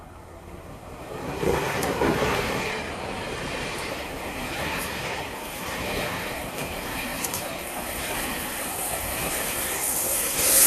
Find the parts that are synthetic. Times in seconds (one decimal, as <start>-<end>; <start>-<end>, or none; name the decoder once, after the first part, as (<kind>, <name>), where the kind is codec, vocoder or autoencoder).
0.0-2.7 (codec, SNAC); 3.9-10.7